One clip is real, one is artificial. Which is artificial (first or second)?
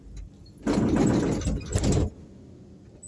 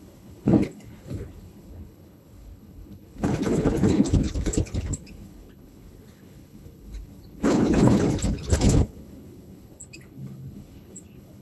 second